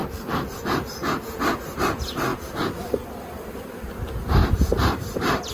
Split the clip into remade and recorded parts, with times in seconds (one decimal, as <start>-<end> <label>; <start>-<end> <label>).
0.0-1.2 remade; 1.2-2.3 recorded; 2.3-3.9 remade; 3.9-4.4 recorded; 4.4-5.5 remade